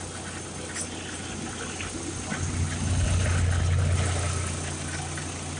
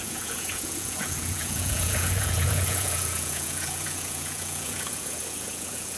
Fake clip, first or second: second